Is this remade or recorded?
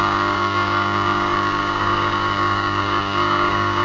remade